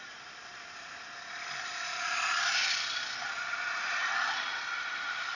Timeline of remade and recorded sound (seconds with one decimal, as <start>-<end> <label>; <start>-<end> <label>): 0.0-5.3 recorded